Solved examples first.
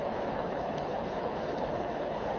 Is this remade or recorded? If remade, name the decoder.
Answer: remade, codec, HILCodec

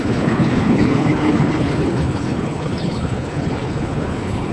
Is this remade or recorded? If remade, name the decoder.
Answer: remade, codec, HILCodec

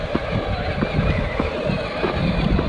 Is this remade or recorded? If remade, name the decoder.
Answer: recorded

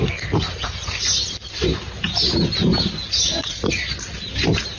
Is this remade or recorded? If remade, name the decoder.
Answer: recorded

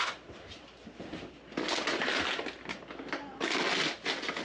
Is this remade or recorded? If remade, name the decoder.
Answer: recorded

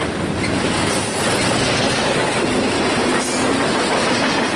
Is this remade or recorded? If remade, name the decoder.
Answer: recorded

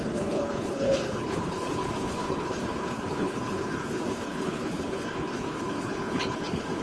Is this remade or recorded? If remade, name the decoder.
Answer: remade, codec, HILCodec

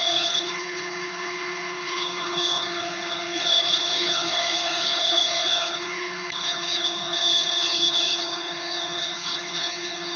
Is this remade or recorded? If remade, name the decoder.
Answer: remade, codec, HILCodec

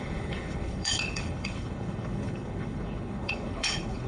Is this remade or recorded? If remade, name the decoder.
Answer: remade, codec, HILCodec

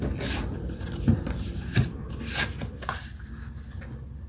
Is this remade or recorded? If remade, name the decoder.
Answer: recorded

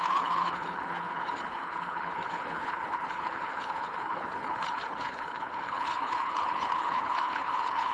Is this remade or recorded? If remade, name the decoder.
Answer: remade, codec, HILCodec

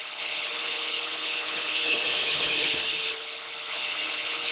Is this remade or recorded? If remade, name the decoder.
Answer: remade, codec, HILCodec